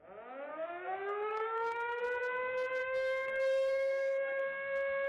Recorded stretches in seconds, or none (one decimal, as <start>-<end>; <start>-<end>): 0.0-0.5; 2.0-2.8; 4.4-5.1